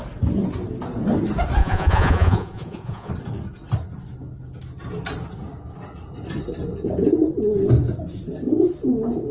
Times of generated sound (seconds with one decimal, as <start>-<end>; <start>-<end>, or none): 1.6-3.1